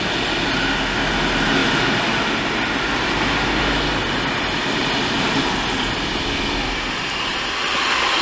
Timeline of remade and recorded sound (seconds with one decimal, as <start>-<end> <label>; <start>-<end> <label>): 0.0-8.2 recorded

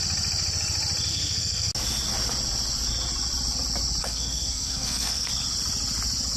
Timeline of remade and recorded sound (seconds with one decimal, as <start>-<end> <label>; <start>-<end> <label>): 0.0-1.1 recorded; 1.1-1.7 remade; 1.7-4.0 recorded; 4.0-5.3 remade; 5.3-6.4 recorded

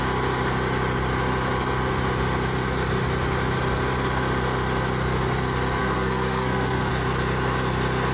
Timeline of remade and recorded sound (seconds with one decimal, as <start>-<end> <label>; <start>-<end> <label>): 0.0-5.8 recorded; 5.8-6.9 remade; 6.9-8.1 recorded

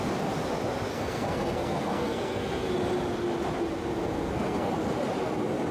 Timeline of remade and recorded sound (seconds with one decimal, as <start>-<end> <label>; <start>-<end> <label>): 0.0-0.9 recorded; 0.9-2.7 remade; 2.7-4.0 recorded; 4.0-4.7 remade; 4.7-5.7 recorded

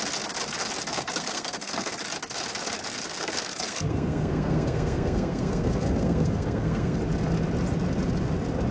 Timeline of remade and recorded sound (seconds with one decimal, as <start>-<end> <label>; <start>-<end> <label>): 0.0-0.9 recorded; 0.9-1.9 remade; 1.9-3.1 recorded; 3.1-7.0 remade; 7.0-8.7 recorded

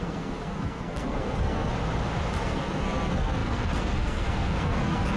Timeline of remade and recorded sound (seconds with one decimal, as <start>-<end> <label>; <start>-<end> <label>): 0.0-1.7 remade; 1.7-2.4 recorded; 2.4-5.2 remade